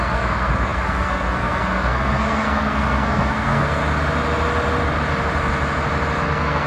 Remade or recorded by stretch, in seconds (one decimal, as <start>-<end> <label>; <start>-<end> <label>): 0.0-3.8 remade; 3.8-6.2 recorded; 6.2-6.7 remade

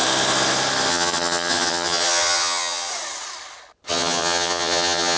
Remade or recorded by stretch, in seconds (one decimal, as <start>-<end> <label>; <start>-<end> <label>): 0.0-0.9 recorded; 0.9-2.9 remade; 2.9-3.9 recorded; 3.9-5.2 remade

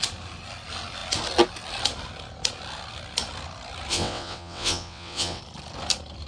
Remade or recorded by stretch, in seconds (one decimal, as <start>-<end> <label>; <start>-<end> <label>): 0.0-3.9 recorded; 3.9-5.4 remade; 5.4-6.3 recorded

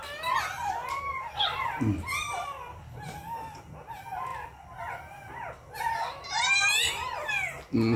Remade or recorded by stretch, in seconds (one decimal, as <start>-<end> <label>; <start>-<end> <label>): 0.0-8.0 recorded

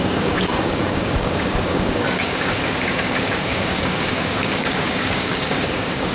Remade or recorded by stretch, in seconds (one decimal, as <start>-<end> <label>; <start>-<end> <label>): 0.0-6.1 remade

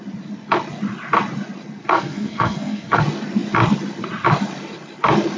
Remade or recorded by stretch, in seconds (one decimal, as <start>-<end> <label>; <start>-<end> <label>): 0.0-1.9 recorded; 1.9-3.0 remade; 3.0-5.4 recorded

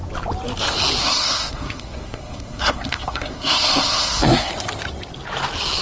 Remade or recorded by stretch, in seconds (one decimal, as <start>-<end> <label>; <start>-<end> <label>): 0.0-1.0 recorded; 1.0-4.5 remade; 4.5-5.8 recorded

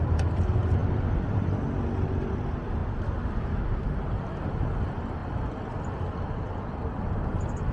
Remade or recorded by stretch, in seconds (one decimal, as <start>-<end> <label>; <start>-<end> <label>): 0.0-7.7 recorded